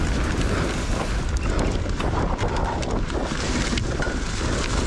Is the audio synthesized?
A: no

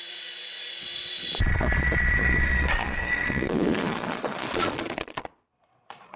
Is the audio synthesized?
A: yes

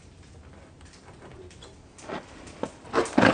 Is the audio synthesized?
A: no